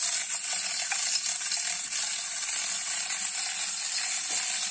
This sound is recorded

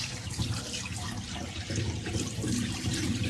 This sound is remade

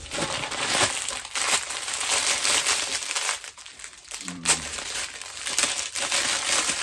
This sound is remade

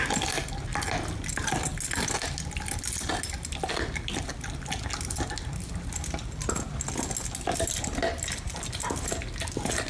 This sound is recorded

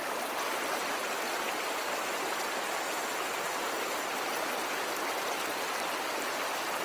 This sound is recorded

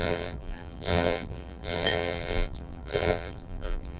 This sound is remade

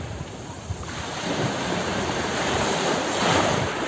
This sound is remade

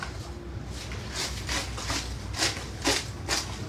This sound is recorded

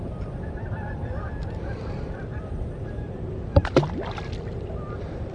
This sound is remade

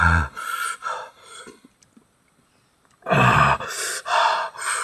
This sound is remade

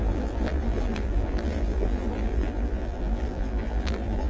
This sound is remade